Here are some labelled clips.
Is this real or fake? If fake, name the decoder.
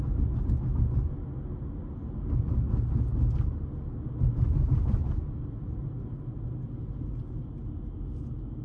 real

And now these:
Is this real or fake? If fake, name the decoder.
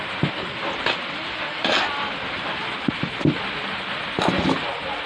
real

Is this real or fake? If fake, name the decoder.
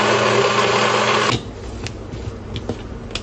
real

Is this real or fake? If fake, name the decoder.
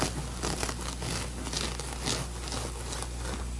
real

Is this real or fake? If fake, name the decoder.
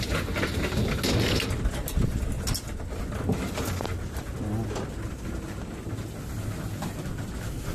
real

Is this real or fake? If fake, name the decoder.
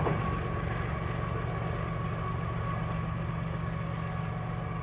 real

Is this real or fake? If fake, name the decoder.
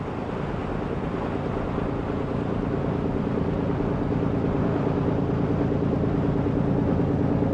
real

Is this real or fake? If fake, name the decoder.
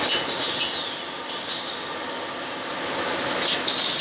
real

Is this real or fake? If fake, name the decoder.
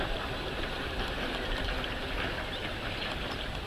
fake, vocoder, BigVGAN v2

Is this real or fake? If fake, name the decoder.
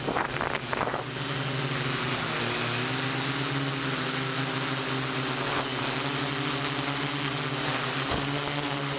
real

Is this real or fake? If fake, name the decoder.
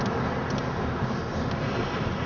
real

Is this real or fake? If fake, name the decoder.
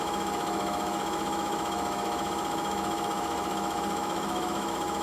fake, autoencoder, DAC-VAE